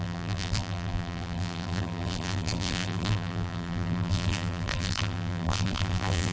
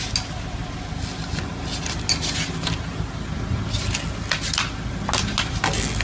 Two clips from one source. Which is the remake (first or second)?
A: first